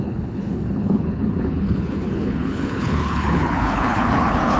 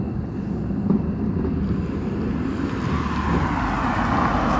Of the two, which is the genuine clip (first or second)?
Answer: second